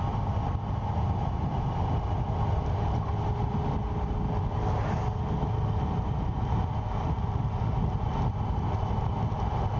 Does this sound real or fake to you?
real